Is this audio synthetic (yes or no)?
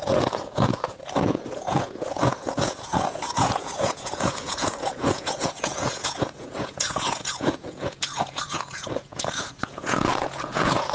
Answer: yes